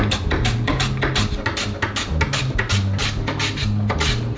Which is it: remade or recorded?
recorded